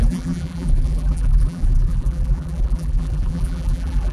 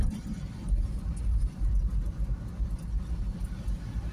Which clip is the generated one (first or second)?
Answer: first